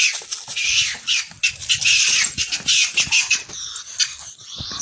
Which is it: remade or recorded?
recorded